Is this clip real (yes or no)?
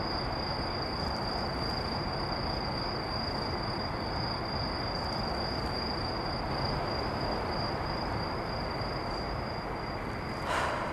yes